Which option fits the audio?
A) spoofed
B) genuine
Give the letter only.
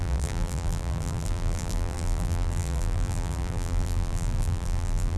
A